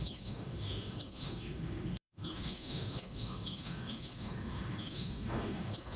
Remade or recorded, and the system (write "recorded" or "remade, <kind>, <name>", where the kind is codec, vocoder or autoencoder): remade, autoencoder, DAC-VAE